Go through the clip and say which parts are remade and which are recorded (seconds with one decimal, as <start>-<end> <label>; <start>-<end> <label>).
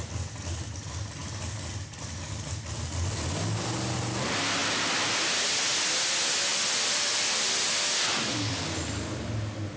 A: 0.0-6.5 recorded; 6.5-8.6 remade; 8.6-9.8 recorded